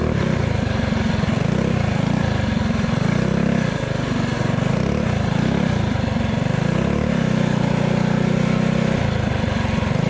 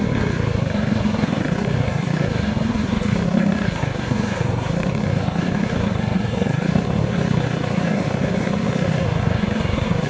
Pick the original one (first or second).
first